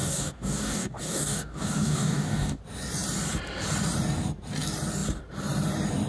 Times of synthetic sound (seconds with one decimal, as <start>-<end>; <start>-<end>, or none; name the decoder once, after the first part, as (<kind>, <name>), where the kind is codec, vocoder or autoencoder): 0.0-2.6 (codec, DAC)

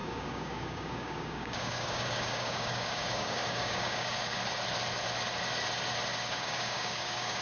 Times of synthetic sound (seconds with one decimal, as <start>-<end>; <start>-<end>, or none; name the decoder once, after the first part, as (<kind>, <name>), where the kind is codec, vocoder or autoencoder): 0.0-4.4 (codec, DAC); 6.1-7.4

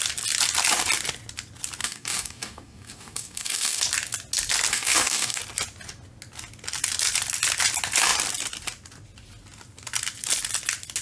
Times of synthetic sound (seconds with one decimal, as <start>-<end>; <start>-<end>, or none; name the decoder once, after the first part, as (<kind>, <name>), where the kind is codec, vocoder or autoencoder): 1.8-3.8 (codec, DAC); 4.7-5.4

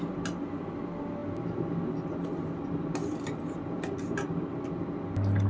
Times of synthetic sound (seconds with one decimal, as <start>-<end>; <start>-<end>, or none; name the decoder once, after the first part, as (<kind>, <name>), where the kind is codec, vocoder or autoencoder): none

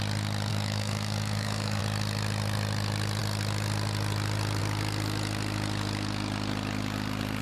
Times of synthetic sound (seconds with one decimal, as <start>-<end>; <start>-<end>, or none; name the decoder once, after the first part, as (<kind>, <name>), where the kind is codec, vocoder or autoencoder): 0.5-1.8 (codec, DAC)

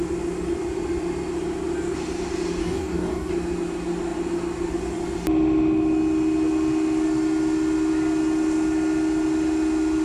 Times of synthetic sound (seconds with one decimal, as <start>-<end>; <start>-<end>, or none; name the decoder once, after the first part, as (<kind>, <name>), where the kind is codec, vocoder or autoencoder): 2.6-3.3 (codec, DAC)

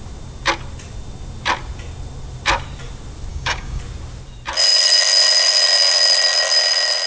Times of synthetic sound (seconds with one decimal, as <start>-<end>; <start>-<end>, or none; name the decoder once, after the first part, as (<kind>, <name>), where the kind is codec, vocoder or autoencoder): 3.3-3.8 (codec, DAC)